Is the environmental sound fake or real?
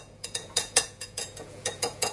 fake